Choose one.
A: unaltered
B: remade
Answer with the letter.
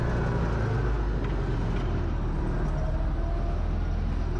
A